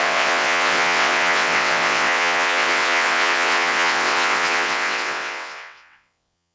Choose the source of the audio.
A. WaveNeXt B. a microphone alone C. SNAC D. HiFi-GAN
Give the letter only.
A